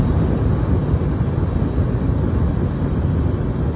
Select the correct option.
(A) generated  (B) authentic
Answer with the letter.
B